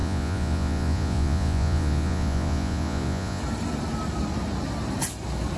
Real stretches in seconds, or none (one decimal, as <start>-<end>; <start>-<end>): 3.4-5.6